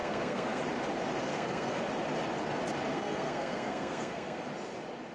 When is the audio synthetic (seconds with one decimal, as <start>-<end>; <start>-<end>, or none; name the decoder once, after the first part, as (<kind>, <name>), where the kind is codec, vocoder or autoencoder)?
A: 0.0-0.6 (codec, SNAC); 1.3-1.8; 2.9-4.4